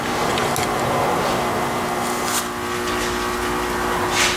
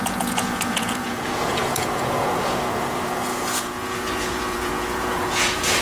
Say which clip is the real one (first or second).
first